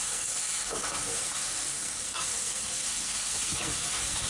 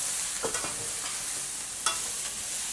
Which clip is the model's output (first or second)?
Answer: first